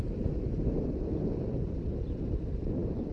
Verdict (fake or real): real